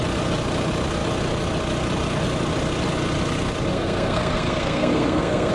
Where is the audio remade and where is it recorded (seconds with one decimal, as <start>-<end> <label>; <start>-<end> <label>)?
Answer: 0.0-3.7 recorded; 3.7-5.5 remade